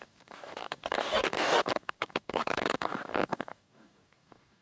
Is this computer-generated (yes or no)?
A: yes